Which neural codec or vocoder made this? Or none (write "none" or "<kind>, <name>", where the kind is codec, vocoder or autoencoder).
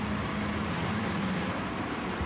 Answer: vocoder, BigVGAN v2